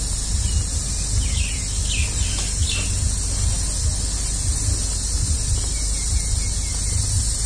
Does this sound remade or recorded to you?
recorded